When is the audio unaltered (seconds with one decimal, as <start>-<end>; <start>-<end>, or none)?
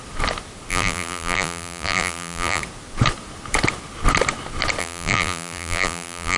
0.0-0.7; 2.6-4.8